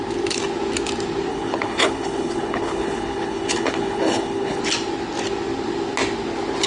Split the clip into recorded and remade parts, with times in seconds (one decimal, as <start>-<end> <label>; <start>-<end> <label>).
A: 0.0-1.3 recorded; 1.3-4.6 remade; 4.6-6.7 recorded

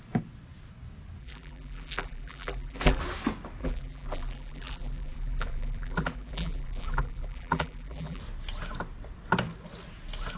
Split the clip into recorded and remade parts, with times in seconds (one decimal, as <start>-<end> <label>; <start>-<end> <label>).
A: 0.0-1.2 recorded; 1.2-3.0 remade; 3.0-3.6 recorded; 3.6-8.2 remade; 8.2-10.4 recorded

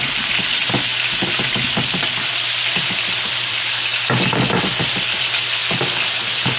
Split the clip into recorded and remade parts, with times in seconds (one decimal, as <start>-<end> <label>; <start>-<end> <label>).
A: 0.0-0.9 remade; 0.9-2.9 recorded; 2.9-3.9 remade; 3.9-4.6 recorded; 4.6-5.6 remade; 5.6-6.6 recorded

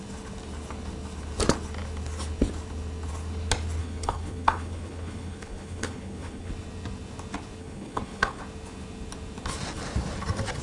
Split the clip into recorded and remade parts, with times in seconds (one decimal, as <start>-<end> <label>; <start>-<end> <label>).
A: 0.0-3.8 recorded; 3.8-6.5 remade; 6.5-7.6 recorded; 7.6-8.4 remade; 8.4-10.6 recorded

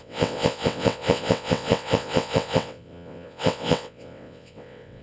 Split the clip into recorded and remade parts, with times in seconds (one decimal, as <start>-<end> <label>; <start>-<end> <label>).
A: 0.0-5.0 remade

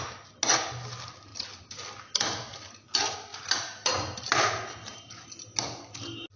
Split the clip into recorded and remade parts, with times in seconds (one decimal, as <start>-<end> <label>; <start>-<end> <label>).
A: 0.0-6.4 recorded

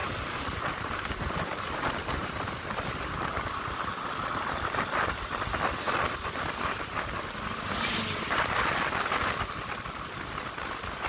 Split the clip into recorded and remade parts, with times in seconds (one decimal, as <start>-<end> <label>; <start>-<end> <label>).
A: 0.0-2.8 remade; 2.8-11.1 recorded